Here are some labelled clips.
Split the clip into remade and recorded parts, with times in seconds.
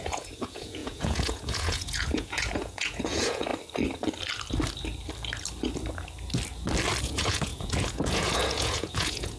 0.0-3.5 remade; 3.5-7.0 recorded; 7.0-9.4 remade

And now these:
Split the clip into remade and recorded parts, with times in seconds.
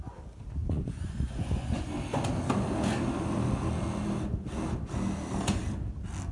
0.0-0.6 recorded; 0.6-1.9 remade; 1.9-6.3 recorded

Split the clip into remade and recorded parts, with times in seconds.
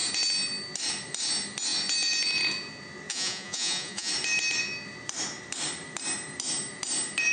0.0-3.1 recorded; 3.1-4.1 remade; 4.1-7.3 recorded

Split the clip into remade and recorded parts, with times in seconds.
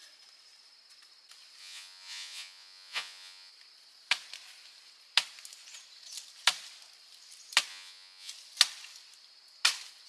0.0-1.6 recorded; 1.6-3.5 remade; 3.5-7.7 recorded; 7.7-8.3 remade; 8.3-10.1 recorded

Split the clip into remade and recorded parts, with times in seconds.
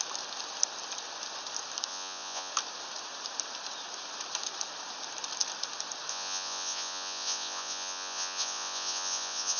0.0-1.9 recorded; 1.9-2.5 remade; 2.5-6.1 recorded; 6.1-9.6 remade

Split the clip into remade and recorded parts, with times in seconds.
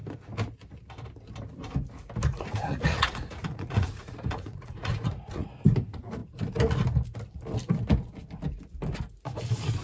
0.0-2.3 recorded; 2.3-5.5 remade; 5.5-9.8 recorded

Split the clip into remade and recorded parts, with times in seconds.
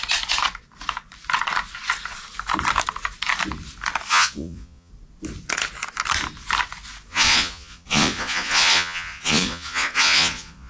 0.0-4.1 recorded; 4.1-4.9 remade; 4.9-7.1 recorded; 7.1-10.7 remade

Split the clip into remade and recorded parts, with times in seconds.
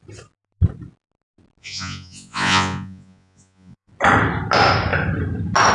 0.0-1.6 recorded; 1.6-3.9 remade; 3.9-5.7 recorded